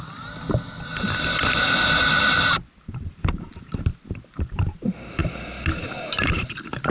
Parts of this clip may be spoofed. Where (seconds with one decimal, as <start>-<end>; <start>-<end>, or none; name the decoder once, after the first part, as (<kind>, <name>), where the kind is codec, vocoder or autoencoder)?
1.0-4.5 (vocoder, BigVGAN v2)